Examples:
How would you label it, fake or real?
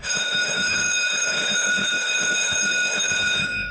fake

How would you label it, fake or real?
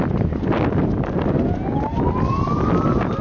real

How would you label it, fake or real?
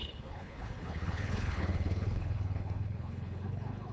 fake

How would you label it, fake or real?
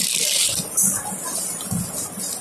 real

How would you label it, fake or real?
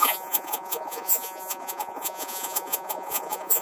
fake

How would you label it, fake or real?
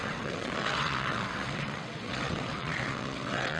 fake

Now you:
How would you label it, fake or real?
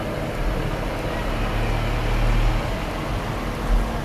real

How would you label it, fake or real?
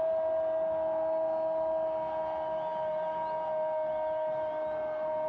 real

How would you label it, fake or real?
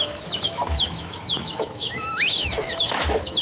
fake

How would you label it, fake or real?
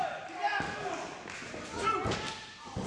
real